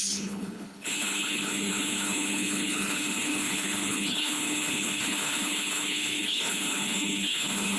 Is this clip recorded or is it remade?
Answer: remade